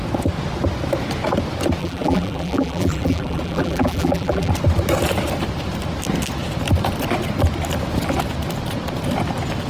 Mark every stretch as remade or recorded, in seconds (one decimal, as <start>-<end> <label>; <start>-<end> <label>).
0.0-1.8 recorded; 1.8-4.5 remade; 4.5-9.7 recorded

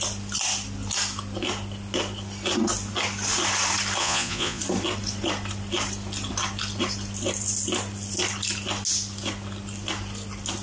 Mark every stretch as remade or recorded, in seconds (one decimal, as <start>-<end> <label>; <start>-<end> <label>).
0.0-4.0 recorded; 4.0-4.6 remade; 4.6-10.6 recorded

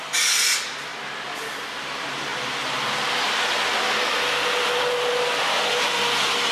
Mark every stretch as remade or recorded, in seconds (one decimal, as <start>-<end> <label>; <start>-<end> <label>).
0.0-6.5 recorded

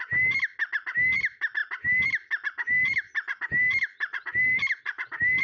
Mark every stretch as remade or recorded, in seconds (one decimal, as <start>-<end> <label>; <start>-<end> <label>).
0.0-5.4 recorded

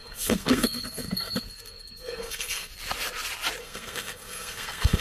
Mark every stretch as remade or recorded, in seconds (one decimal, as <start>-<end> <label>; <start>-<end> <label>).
0.0-2.7 remade; 2.7-3.6 recorded; 3.6-5.0 remade